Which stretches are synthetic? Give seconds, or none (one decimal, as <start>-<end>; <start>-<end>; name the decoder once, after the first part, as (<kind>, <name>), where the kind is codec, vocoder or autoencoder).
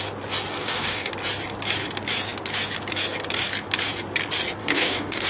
0.6-1.1 (codec, DAC); 4.6-5.3